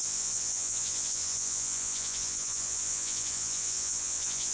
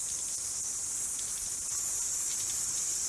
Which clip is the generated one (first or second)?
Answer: first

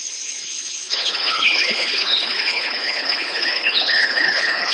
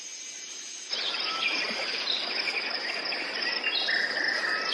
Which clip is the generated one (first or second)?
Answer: first